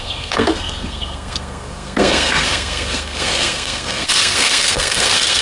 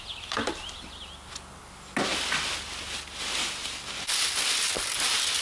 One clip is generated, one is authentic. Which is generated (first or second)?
first